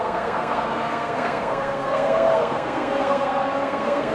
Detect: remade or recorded remade